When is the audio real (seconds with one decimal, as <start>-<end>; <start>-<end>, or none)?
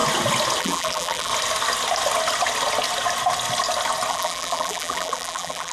0.0-0.6; 1.3-4.1